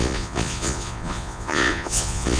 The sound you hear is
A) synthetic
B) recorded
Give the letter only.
A